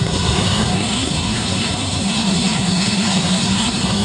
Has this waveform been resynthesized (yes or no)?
yes